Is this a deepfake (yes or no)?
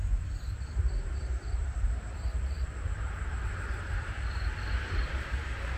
yes